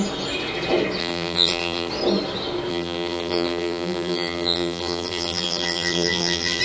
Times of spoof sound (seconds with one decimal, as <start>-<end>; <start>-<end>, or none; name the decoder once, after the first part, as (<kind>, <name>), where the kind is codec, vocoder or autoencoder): 1.0-1.9 (vocoder, BigVGAN v2); 2.7-6.6